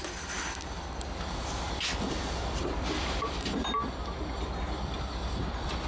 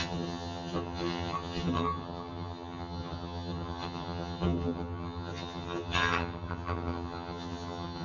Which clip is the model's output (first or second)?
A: second